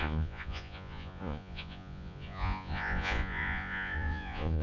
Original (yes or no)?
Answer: no